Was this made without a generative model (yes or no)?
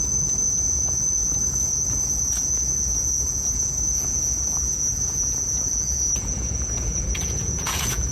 no